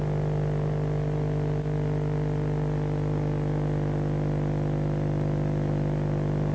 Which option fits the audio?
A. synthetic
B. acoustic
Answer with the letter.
B